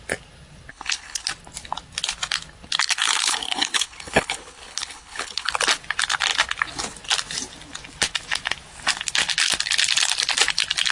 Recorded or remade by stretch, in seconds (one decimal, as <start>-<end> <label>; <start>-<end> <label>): 0.0-0.7 recorded; 0.7-1.3 remade; 1.3-2.8 recorded; 2.8-5.5 remade; 5.5-10.9 recorded